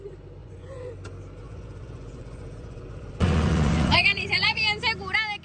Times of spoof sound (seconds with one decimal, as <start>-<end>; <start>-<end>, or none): 0.4-0.9; 1.4-4.6